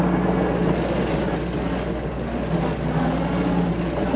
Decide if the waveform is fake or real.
real